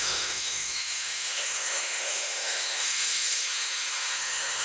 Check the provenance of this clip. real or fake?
fake